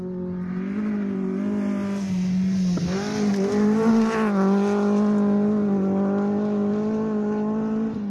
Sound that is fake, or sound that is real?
real